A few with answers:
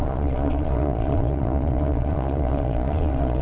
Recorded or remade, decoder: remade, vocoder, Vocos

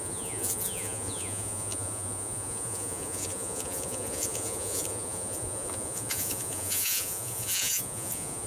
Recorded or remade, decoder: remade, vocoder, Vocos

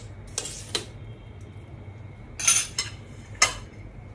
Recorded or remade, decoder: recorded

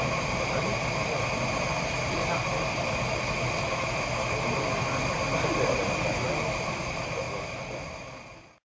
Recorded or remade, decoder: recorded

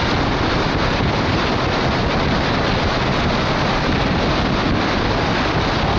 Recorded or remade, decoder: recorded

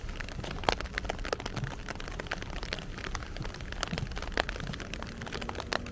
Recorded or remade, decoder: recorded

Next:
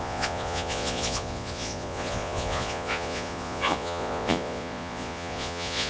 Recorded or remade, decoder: remade, vocoder, Vocos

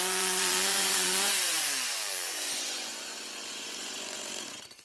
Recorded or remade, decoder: remade, vocoder, Vocos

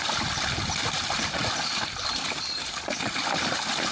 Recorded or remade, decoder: recorded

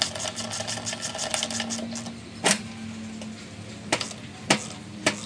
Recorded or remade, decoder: recorded